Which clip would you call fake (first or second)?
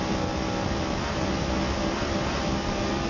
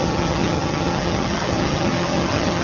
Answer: second